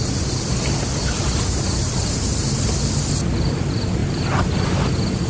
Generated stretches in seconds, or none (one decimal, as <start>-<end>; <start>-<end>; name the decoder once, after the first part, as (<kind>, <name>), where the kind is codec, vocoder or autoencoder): none